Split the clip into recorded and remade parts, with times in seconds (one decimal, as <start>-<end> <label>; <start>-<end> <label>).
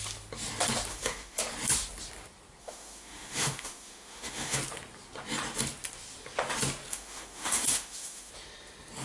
0.0-0.9 recorded; 0.9-1.4 remade; 1.4-2.6 recorded; 2.6-4.6 remade; 4.6-6.9 recorded; 6.9-8.3 remade; 8.3-9.0 recorded